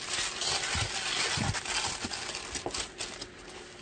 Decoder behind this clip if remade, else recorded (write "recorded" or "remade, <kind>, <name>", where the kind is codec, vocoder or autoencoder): recorded